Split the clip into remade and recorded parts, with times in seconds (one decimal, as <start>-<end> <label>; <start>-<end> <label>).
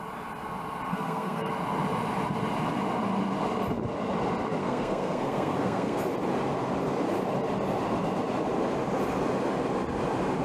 0.0-0.9 recorded; 0.9-1.5 remade; 1.5-4.6 recorded; 4.6-6.0 remade; 6.0-10.4 recorded